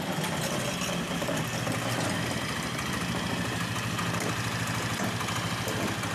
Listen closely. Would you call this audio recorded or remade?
recorded